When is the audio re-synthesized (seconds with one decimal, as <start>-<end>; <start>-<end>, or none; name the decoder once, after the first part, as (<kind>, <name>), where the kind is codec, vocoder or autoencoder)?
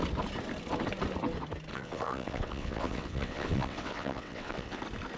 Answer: 1.7-4.8 (vocoder, WaveNeXt)